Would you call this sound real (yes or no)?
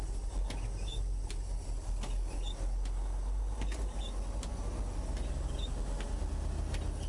yes